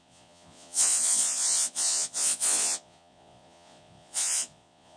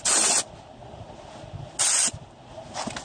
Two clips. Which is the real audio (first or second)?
second